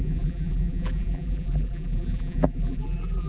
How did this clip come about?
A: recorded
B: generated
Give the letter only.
B